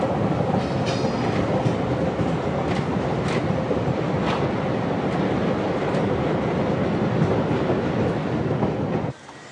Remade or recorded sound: recorded